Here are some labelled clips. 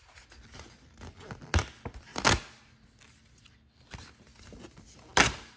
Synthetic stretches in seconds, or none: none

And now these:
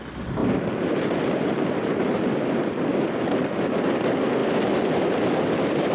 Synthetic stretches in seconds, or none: none